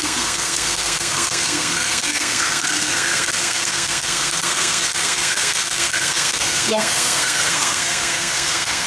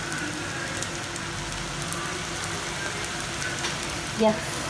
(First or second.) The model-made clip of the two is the first